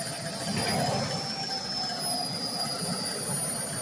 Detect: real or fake real